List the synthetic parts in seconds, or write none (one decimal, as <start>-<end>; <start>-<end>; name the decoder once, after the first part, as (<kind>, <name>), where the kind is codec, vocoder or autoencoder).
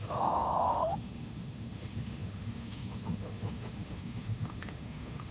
0.0-5.3 (autoencoder, DAC-VAE)